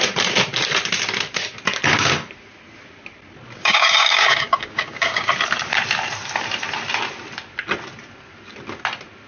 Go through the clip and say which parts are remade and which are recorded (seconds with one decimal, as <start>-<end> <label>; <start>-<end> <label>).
0.0-3.6 recorded; 3.6-5.3 remade; 5.3-9.3 recorded